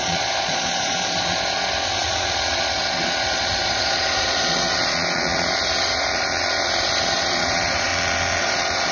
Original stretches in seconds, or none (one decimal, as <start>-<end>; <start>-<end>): 7.9-8.4